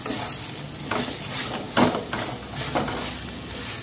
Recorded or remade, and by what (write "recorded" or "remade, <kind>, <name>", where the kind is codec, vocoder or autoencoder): recorded